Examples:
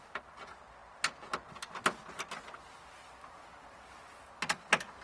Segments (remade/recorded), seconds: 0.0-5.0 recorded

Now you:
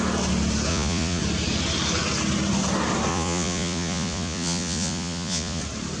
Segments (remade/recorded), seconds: 0.0-0.7 recorded; 0.7-1.2 remade; 1.2-3.1 recorded; 3.1-5.6 remade; 5.6-6.0 recorded